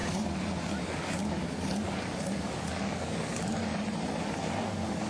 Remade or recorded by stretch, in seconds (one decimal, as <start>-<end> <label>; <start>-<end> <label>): 0.0-0.7 recorded; 0.7-3.7 remade; 3.7-4.2 recorded; 4.2-5.1 remade